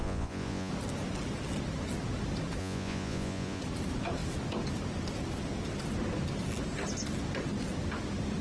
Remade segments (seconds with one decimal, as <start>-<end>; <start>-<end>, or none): 0.0-0.7; 2.6-3.6